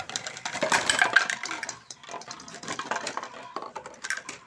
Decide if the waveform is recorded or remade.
remade